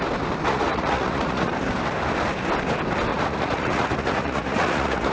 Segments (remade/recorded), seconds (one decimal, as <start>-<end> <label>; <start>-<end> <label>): 0.0-0.5 recorded; 0.5-1.5 remade; 1.5-3.1 recorded; 3.1-5.1 remade